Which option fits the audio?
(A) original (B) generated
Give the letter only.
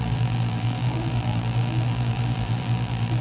B